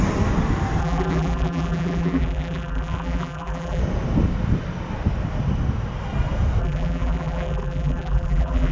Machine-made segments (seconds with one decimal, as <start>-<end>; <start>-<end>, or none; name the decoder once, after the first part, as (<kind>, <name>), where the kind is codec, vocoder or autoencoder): 0.8-3.8 (vocoder, BigVGAN v2); 6.6-8.7